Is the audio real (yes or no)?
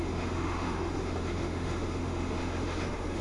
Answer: no